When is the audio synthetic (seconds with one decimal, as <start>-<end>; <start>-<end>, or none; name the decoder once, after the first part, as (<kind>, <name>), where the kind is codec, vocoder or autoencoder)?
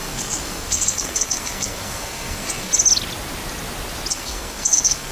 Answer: 0.0-2.7 (codec, SNAC); 4.1-5.1